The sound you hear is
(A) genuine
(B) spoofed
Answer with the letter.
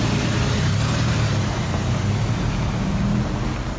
A